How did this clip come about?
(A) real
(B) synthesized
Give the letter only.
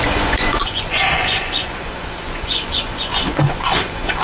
B